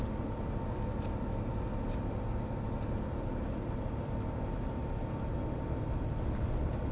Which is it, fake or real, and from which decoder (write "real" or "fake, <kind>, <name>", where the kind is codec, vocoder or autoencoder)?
real